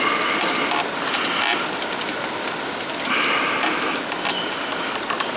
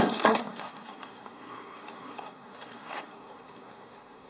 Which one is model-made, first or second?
second